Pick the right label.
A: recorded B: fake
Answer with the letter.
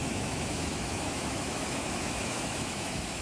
B